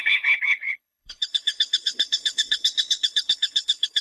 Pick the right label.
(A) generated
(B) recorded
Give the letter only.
A